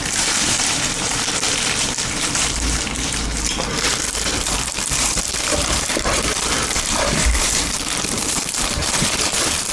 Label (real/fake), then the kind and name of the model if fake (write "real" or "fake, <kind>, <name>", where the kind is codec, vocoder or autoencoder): fake, vocoder, BigVGAN v2